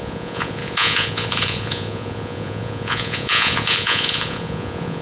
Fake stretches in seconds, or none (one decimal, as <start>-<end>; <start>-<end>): 0.0-5.0